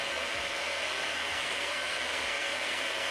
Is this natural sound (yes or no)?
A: no